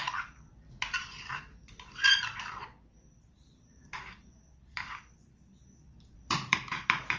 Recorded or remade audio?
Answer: remade